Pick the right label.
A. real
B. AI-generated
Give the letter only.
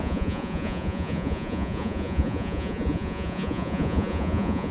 B